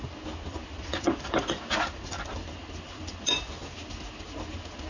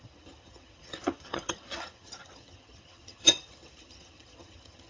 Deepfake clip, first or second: second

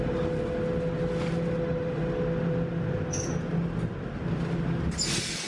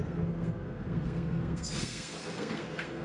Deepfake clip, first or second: second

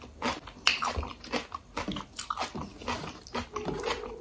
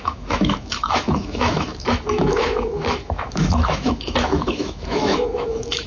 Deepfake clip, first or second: second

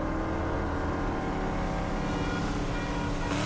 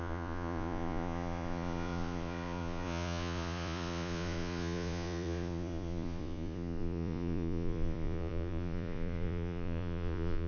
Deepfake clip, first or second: second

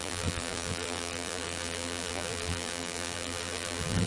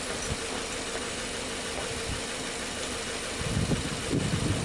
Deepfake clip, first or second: first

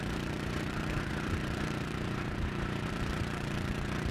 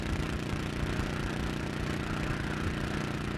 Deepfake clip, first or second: first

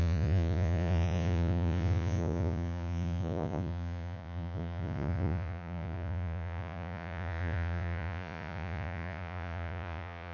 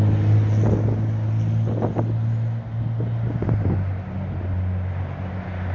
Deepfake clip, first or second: first